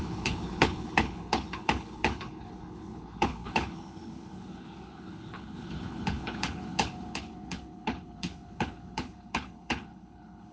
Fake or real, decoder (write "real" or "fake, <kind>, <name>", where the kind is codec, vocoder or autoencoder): fake, codec, HILCodec